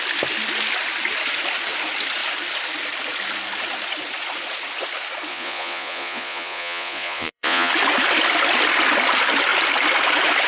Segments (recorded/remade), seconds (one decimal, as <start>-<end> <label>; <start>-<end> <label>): 0.0-5.3 recorded; 5.3-7.7 remade; 7.7-10.5 recorded